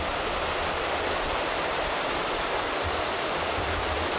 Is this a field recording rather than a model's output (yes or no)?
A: yes